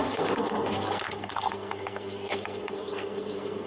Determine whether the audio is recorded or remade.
remade